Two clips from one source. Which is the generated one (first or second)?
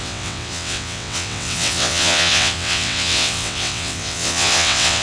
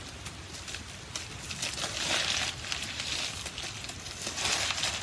first